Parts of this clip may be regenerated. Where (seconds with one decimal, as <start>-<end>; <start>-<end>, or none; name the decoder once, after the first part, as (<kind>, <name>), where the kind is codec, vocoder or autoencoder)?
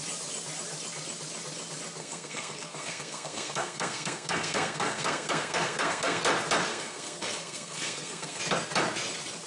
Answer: 2.0-6.2 (codec, SNAC); 6.7-8.4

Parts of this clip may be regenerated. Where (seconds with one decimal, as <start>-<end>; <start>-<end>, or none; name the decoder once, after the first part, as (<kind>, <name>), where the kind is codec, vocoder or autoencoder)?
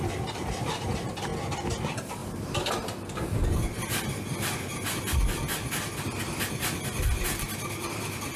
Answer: 0.0-1.3 (vocoder, BigVGAN v2); 1.8-3.4; 7.7-8.4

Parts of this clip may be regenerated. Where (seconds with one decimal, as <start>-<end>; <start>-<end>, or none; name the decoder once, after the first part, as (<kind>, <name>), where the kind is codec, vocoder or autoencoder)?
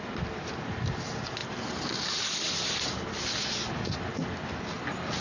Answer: none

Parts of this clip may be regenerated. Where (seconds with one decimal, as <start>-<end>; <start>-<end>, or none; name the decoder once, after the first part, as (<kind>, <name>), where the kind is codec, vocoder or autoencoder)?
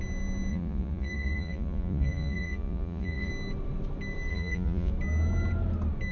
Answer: 0.5-3.3 (vocoder, Vocos); 4.3-4.9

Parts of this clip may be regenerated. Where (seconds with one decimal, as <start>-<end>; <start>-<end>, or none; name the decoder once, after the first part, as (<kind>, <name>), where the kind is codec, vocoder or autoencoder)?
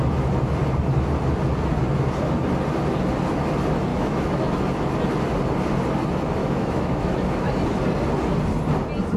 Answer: 3.9-4.6 (autoencoder, DAC-VAE); 6.4-7.5